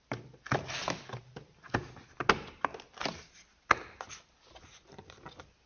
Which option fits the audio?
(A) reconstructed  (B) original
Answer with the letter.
B